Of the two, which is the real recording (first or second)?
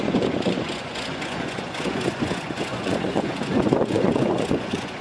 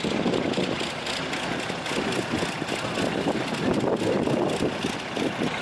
second